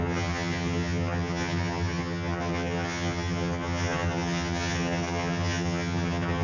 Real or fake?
fake